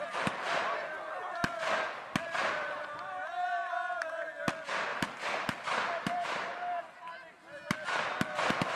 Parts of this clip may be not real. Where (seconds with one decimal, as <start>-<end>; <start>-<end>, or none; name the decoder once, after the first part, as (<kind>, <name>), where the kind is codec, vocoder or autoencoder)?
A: 4.9-6.8 (vocoder, BigVGAN v2)